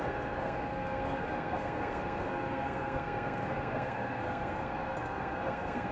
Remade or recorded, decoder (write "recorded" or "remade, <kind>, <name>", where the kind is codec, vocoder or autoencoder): remade, codec, SNAC